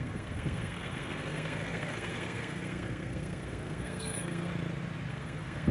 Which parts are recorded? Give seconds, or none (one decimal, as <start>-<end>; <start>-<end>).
4.5-5.1